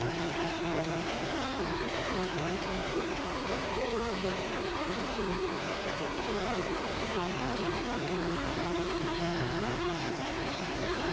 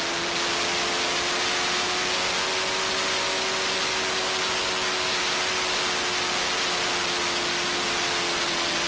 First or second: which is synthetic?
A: first